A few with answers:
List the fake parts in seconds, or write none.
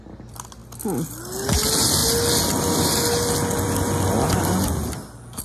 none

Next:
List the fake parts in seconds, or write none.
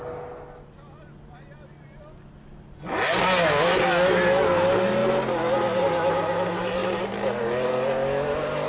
none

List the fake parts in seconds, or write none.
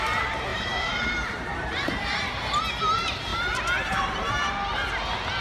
0.5-2.6; 3.3-4.3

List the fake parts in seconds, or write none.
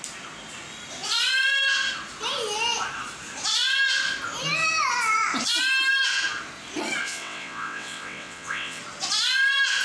7.0-8.8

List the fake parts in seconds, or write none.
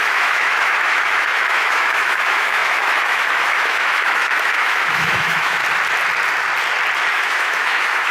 0.0-5.6; 7.1-8.1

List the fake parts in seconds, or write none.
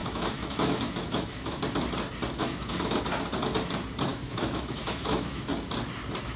0.0-1.6; 2.4-3.0; 4.1-5.5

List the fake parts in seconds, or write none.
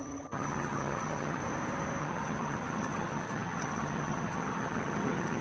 0.0-1.4; 2.0-5.4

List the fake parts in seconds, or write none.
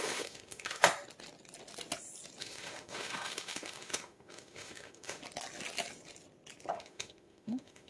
0.0-0.8; 2.4-5.2; 6.7-7.9